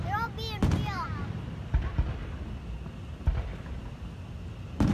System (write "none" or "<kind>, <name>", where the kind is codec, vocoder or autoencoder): none